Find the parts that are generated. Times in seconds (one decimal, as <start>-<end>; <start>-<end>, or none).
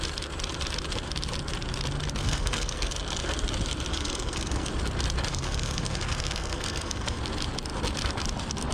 2.2-2.9; 3.9-4.7; 5.3-7.2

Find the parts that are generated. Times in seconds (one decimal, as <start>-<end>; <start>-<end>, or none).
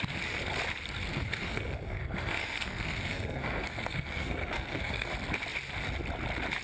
1.1-5.1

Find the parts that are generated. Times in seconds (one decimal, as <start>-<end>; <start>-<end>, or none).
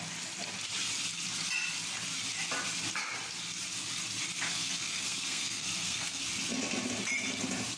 4.5-6.2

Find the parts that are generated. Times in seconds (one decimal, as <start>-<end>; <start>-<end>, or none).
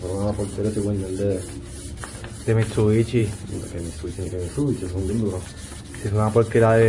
none